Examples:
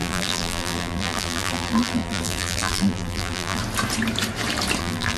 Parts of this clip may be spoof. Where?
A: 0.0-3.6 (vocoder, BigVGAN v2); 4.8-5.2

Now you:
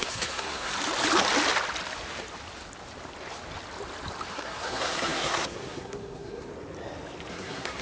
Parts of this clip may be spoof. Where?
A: 0.0-0.7 (codec, SNAC); 4.3-6.5; 7.3-7.8